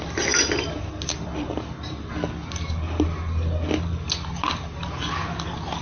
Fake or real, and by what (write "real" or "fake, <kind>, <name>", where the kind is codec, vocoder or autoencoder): real